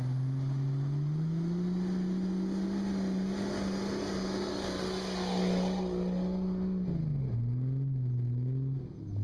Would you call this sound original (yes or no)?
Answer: yes